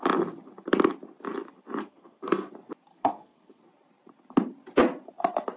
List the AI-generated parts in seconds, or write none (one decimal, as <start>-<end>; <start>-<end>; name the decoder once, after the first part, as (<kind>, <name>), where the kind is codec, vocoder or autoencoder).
1.8-2.5 (codec, SNAC); 2.9-3.6